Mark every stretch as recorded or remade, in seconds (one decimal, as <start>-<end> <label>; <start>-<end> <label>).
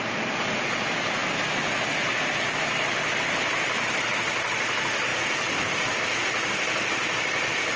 0.0-7.8 recorded